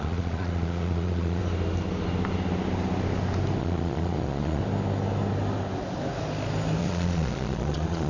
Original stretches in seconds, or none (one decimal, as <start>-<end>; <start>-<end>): 1.4-3.6; 4.6-6.8